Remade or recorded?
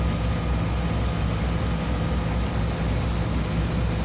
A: recorded